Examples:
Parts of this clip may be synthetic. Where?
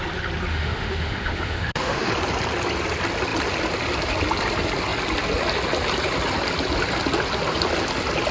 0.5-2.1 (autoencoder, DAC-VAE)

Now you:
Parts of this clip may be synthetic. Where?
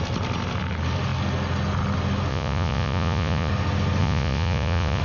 2.3-3.5 (vocoder, Vocos); 4.0-5.0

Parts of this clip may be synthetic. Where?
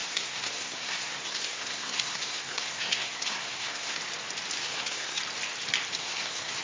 0.0-4.0 (codec, SNAC); 4.6-5.2; 6.0-6.6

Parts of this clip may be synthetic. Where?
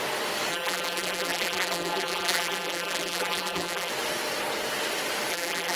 0.5-3.9 (vocoder, BigVGAN v2); 5.3-5.8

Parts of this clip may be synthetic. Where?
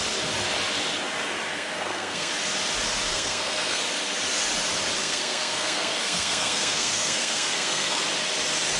1.5-2.3 (codec, SNAC); 3.1-3.8; 5.0-8.0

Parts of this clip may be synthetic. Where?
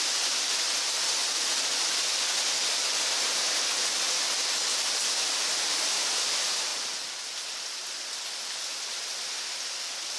none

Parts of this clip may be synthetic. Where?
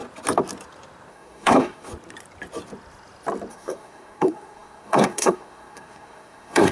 1.1-1.9 (codec, SNAC); 3.5-6.7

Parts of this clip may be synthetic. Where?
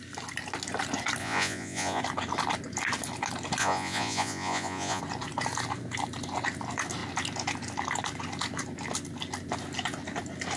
1.2-2.0 (vocoder, Vocos); 3.6-5.0